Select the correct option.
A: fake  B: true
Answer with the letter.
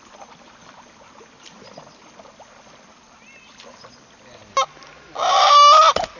B